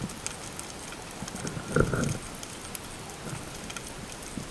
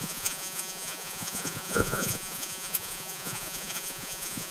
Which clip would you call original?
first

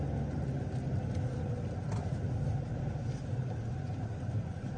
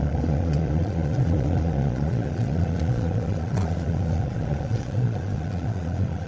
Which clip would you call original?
first